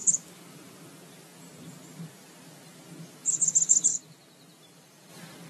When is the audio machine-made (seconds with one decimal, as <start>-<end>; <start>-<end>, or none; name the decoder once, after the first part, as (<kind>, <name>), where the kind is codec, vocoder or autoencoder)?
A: 0.0-0.7 (vocoder, BigVGAN v2); 1.3-3.1; 3.9-5.1